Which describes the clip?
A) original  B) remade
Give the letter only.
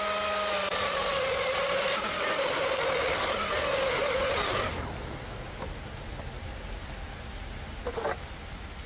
A